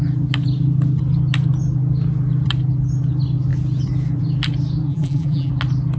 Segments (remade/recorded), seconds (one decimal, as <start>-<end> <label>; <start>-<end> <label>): 0.0-4.9 recorded; 4.9-5.5 remade; 5.5-6.0 recorded

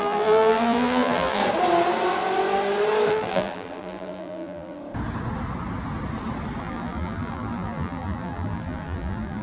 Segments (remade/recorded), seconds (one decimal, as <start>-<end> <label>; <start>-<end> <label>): 0.0-1.4 remade; 1.4-3.1 recorded; 3.1-4.8 remade; 4.8-6.6 recorded; 6.6-9.4 remade

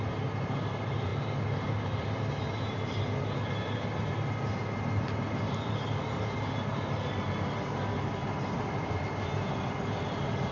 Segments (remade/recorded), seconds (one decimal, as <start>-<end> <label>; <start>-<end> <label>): 0.0-10.5 recorded

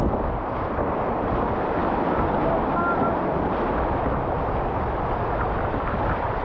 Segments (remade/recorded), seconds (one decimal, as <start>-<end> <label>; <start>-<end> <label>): 0.0-6.4 recorded

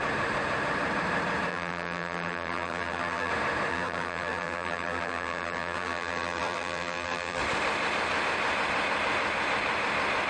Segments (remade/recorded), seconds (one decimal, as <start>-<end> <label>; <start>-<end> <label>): 0.0-1.5 recorded; 1.5-3.3 remade; 3.3-3.7 recorded; 3.7-7.4 remade; 7.4-10.3 recorded

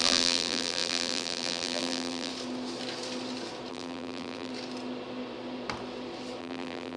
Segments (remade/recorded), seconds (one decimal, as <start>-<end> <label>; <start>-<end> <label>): 0.0-2.3 remade; 2.3-3.7 recorded; 3.7-4.5 remade; 4.5-6.4 recorded; 6.4-7.0 remade

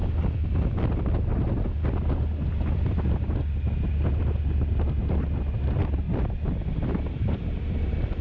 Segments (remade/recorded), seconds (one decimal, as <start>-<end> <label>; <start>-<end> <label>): 0.0-0.5 recorded; 0.5-1.3 remade; 1.3-6.1 recorded; 6.1-8.2 remade